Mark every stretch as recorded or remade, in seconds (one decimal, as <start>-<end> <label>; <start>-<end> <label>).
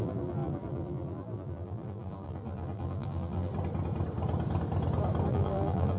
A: 0.0-3.5 remade; 3.5-5.3 recorded; 5.3-6.0 remade